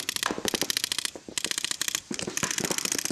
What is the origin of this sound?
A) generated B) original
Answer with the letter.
B